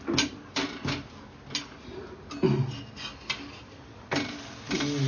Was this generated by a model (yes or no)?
no